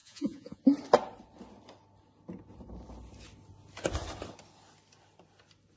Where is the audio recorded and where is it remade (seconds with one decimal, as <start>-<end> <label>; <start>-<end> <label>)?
0.0-0.6 remade; 0.6-5.8 recorded